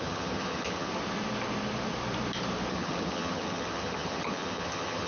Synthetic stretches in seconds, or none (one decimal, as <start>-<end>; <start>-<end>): 0.0-0.9; 2.7-5.1